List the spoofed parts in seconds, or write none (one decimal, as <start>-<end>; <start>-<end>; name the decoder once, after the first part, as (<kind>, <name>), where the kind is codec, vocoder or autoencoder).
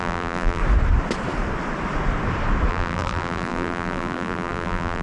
0.0-0.6 (vocoder, BigVGAN v2); 2.7-5.0